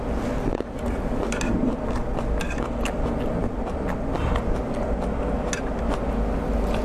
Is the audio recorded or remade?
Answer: recorded